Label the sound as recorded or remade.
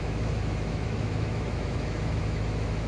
remade